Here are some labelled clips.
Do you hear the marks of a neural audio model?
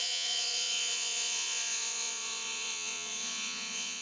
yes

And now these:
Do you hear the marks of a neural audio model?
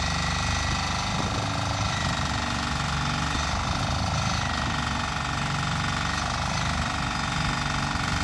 no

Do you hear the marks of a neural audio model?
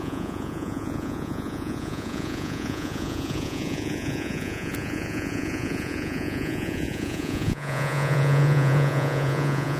yes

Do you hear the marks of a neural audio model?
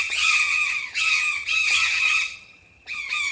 yes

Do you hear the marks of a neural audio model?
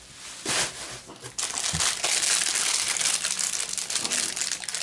no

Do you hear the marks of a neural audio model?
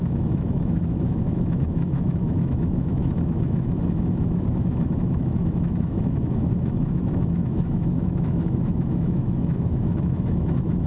yes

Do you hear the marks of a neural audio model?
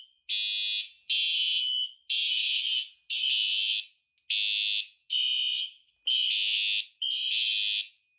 no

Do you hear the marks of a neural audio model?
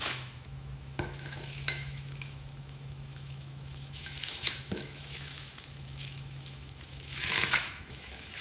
yes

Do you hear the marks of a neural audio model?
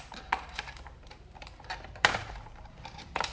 yes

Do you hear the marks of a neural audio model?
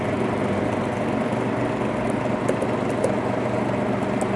no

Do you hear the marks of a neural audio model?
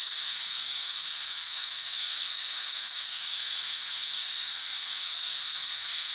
yes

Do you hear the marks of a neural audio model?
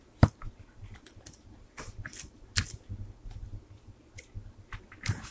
no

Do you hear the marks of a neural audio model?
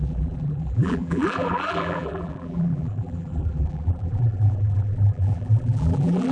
yes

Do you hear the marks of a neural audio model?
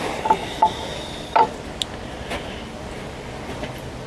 no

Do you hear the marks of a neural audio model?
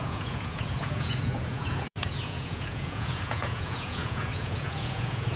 yes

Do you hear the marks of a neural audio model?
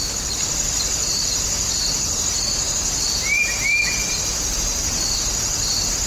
no